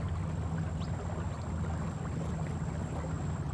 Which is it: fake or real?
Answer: real